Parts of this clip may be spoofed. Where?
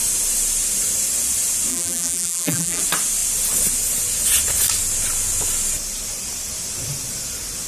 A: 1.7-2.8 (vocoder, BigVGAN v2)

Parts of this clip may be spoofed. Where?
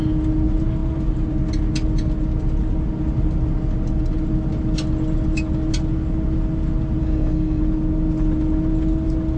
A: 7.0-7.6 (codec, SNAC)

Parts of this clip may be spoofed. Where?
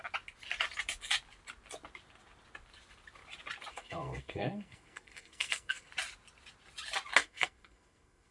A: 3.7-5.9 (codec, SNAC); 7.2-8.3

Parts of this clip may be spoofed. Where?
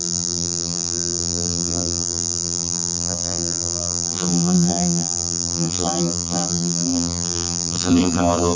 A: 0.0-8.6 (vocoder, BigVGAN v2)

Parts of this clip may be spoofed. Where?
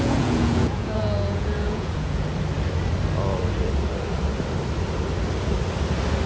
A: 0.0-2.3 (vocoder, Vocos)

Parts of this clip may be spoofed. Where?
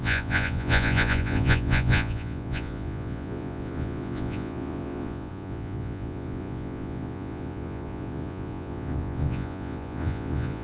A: 0.0-10.6 (vocoder, Vocos)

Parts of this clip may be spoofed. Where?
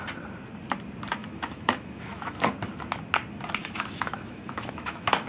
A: 1.2-2.4 (autoencoder, DAC-VAE); 3.6-5.3